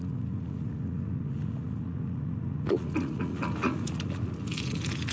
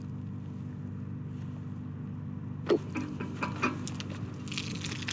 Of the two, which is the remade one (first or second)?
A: first